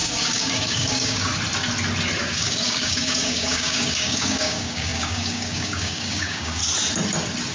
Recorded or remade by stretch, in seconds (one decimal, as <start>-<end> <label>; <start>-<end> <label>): 0.0-1.3 remade; 1.3-2.2 recorded; 2.2-6.6 remade; 6.6-7.5 recorded